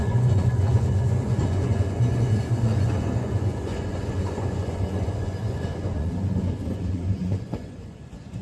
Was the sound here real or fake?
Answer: fake